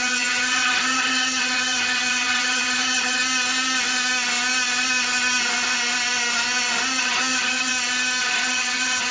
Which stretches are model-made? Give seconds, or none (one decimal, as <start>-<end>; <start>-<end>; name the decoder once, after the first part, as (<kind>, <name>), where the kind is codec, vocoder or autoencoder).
0.0-3.2 (vocoder, HiFi-GAN); 7.0-7.7; 8.2-9.1